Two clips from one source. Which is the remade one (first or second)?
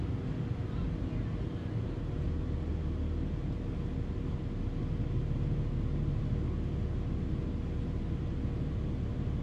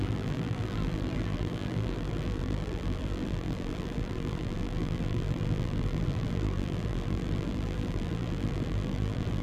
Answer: second